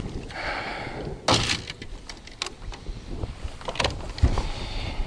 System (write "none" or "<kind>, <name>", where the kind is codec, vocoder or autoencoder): none